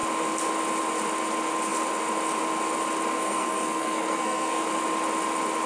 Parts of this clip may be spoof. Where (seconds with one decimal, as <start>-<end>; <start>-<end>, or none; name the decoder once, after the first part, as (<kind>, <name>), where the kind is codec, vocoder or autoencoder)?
3.1-4.6 (codec, SNAC)